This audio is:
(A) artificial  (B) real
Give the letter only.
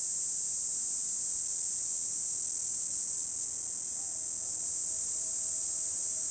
B